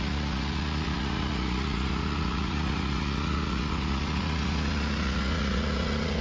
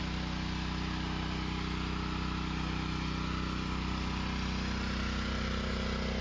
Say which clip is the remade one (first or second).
first